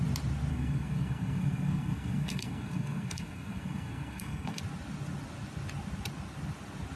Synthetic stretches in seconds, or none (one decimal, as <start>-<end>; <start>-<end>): 0.5-4.6